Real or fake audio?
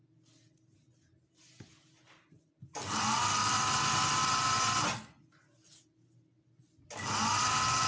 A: real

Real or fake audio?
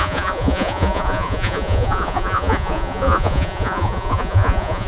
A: fake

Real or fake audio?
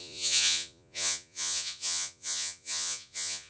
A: fake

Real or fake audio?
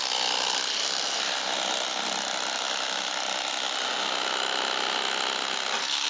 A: real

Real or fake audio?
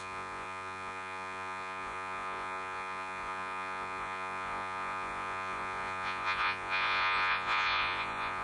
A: fake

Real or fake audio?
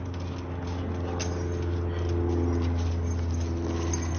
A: real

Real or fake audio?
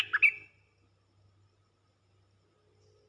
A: real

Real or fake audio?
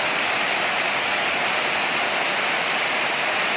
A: real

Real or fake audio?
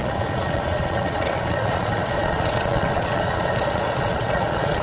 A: fake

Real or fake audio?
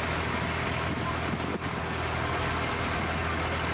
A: real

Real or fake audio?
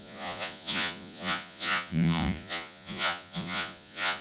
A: fake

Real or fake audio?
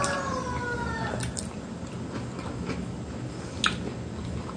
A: real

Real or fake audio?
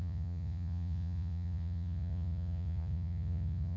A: fake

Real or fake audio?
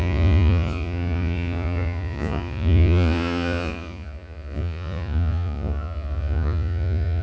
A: fake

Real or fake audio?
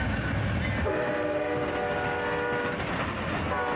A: real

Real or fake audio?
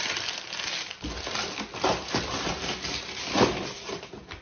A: real